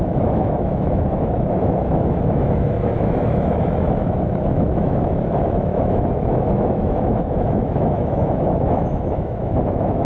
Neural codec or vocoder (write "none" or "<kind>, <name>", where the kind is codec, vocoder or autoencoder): autoencoder, DAC-VAE